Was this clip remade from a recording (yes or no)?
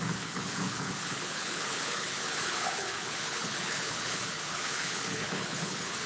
yes